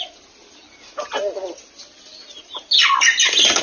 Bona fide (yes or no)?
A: yes